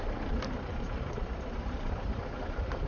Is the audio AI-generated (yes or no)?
yes